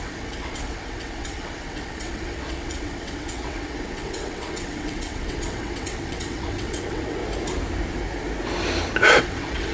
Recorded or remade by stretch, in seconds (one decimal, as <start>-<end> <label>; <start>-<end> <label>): 0.0-7.2 remade; 7.2-9.2 recorded; 9.2-9.7 remade